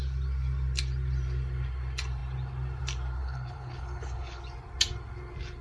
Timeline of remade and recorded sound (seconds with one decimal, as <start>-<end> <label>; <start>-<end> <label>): 0.0-3.2 recorded; 3.2-4.4 remade; 4.4-5.6 recorded